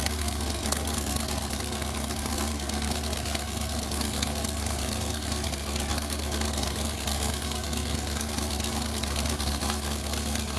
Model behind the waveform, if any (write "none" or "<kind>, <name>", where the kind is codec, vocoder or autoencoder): codec, SNAC